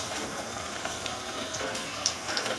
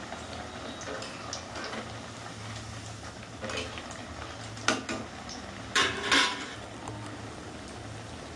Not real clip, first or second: first